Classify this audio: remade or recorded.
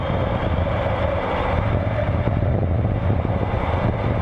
remade